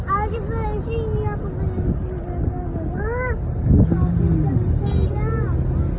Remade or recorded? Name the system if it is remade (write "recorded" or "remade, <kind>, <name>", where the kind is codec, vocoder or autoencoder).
recorded